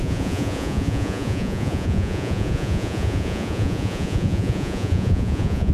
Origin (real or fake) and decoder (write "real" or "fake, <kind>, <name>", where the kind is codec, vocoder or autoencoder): fake, vocoder, Vocos